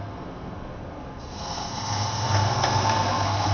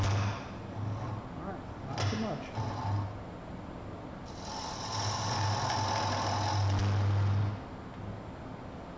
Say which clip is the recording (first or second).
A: second